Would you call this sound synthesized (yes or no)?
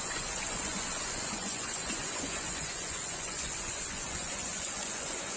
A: yes